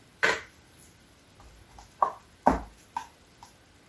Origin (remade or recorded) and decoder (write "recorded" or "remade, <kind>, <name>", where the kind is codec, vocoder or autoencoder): recorded